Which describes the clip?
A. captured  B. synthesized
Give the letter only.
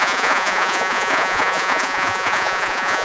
B